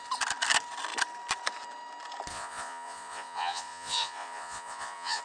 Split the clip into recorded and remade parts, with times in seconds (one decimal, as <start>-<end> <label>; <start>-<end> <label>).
0.0-2.3 recorded; 2.3-5.2 remade